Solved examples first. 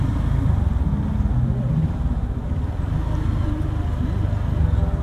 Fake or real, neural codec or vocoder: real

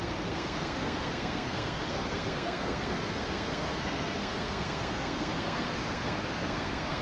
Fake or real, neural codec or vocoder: fake, codec, SNAC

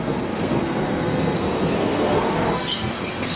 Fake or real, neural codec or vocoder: fake, codec, SNAC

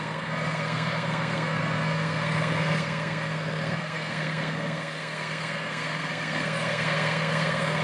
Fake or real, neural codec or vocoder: fake, codec, SNAC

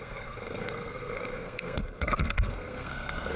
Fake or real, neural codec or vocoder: fake, codec, SNAC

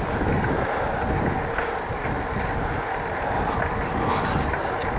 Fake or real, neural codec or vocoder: real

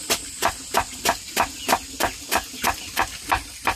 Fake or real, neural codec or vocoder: real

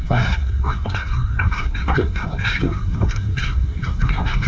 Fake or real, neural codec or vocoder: fake, codec, SNAC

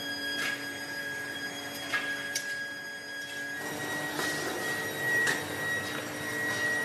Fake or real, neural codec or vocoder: real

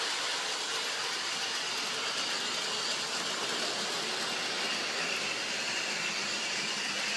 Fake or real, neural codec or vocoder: real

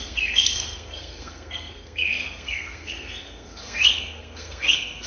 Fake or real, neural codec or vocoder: fake, codec, SNAC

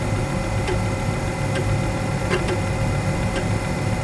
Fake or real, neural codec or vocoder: real